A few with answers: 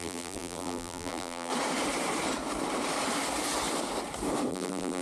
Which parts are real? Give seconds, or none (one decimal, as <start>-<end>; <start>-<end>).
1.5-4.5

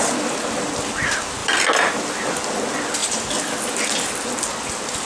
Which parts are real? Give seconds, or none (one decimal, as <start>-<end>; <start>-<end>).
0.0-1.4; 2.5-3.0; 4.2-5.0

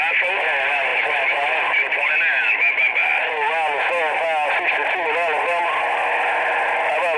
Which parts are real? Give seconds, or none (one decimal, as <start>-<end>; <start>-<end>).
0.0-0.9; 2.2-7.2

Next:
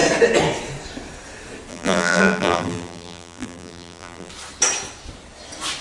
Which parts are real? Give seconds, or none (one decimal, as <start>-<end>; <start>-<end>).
0.0-1.7; 4.3-5.8